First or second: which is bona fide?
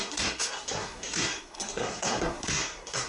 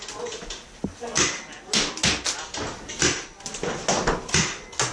second